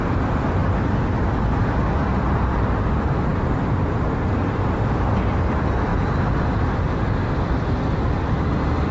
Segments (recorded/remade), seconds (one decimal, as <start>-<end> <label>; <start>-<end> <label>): 0.0-3.3 remade; 3.3-4.8 recorded; 4.8-8.9 remade